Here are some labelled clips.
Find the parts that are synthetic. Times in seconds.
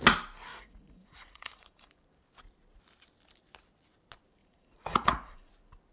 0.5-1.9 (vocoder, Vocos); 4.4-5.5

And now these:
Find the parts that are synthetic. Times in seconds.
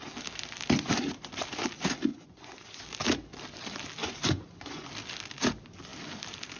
2.1-2.8 (vocoder, Vocos); 4.0-4.9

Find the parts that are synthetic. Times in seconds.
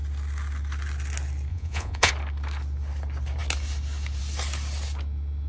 1.5-2.1 (vocoder, Vocos)